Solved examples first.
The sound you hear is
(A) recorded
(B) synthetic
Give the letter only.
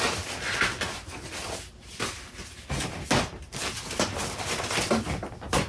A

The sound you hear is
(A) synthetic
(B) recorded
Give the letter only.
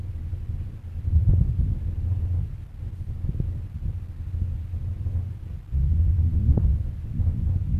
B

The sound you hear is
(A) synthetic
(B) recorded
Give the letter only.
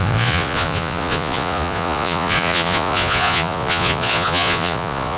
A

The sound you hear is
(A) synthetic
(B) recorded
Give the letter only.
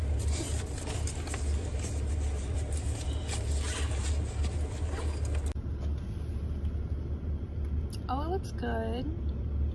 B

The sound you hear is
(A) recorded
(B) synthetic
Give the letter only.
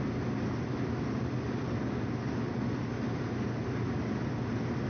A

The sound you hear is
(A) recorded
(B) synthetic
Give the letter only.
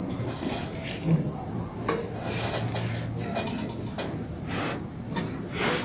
A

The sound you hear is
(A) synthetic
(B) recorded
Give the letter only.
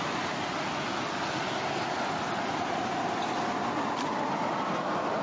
B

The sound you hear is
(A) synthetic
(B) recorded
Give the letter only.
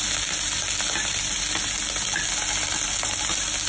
B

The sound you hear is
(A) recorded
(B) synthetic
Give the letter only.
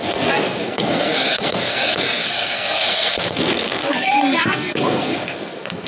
B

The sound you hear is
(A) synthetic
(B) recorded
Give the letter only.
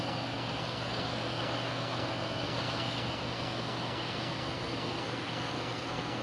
A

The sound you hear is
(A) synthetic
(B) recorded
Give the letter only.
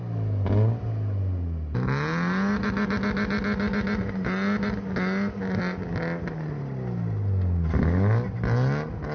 B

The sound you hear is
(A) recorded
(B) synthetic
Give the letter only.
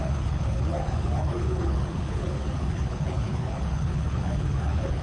B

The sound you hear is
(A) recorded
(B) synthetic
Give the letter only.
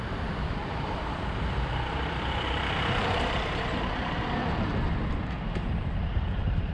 B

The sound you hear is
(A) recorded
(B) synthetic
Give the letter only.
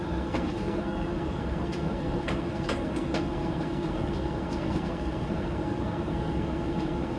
B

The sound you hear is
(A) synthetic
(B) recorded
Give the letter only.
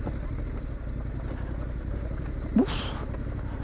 B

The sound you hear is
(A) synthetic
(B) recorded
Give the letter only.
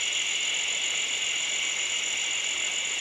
B